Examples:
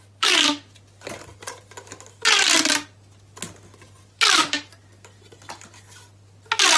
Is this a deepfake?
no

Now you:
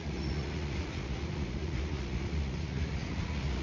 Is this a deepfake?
yes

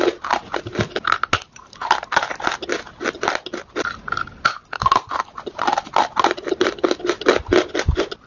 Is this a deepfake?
no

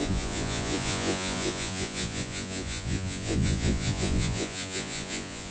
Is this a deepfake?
yes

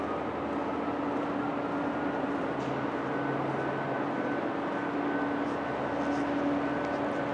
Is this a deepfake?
no